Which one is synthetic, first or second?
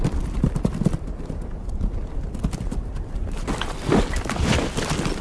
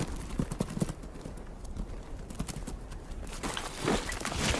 first